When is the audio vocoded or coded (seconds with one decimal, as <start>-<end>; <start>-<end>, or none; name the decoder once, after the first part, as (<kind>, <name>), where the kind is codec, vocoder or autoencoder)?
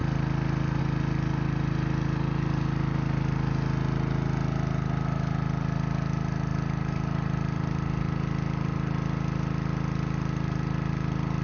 none